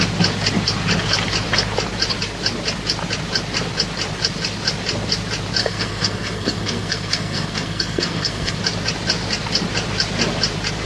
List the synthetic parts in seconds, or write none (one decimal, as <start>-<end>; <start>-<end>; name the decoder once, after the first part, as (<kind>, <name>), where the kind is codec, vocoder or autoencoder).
5.6-8.6 (codec, SNAC)